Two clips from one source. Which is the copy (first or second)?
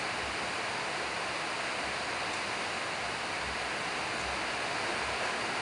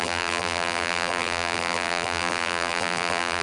second